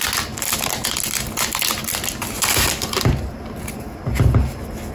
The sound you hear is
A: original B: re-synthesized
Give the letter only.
A